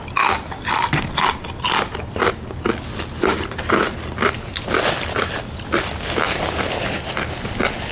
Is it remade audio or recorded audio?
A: recorded